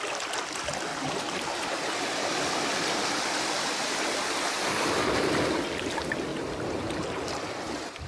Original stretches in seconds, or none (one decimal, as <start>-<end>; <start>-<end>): 0.0-0.9; 1.9-6.3